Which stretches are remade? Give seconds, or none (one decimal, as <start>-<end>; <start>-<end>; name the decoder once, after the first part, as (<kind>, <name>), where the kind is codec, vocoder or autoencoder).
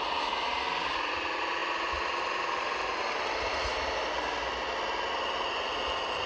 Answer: none